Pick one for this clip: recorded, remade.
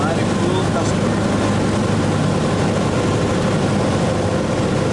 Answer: recorded